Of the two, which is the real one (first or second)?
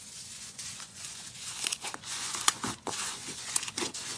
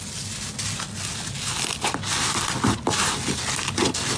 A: second